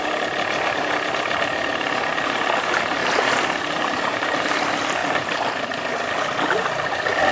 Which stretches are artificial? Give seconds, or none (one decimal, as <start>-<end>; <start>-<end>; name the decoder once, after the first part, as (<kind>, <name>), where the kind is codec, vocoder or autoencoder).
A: 3.0-3.6 (vocoder, BigVGAN v2)